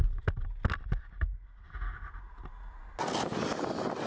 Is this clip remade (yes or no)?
no